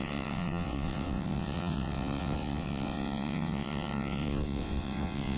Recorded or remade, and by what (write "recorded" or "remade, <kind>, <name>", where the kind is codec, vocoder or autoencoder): remade, vocoder, WaveNeXt